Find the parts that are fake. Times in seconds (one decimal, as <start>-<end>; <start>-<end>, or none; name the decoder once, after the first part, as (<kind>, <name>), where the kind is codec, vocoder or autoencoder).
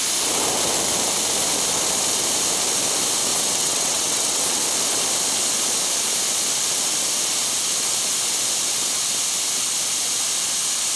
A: 3.3-4.6 (vocoder, WaveNeXt)